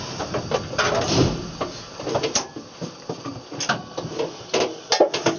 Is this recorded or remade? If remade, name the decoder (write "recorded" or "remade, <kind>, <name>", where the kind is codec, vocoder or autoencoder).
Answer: recorded